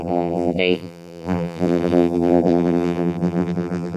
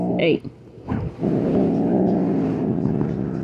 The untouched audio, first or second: second